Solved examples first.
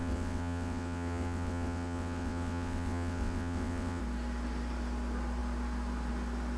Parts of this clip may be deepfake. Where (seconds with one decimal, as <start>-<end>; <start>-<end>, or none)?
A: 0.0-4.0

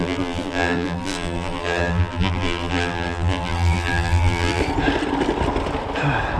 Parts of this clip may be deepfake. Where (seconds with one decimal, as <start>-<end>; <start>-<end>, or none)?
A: 0.0-4.6

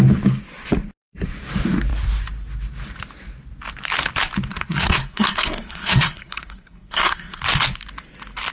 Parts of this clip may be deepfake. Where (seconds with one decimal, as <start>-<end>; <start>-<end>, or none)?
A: 4.5-7.4